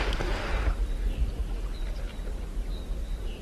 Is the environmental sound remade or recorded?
recorded